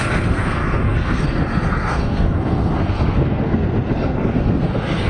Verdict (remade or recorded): remade